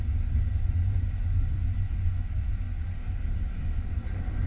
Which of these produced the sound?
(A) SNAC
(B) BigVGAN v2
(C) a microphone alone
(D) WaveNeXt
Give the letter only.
C